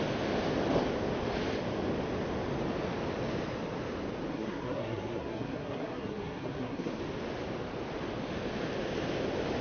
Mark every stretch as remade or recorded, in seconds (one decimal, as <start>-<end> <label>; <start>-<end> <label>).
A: 0.0-4.3 recorded; 4.3-7.0 remade; 7.0-9.6 recorded